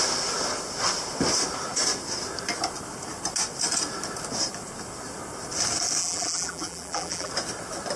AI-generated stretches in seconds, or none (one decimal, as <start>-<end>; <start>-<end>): 6.0-7.3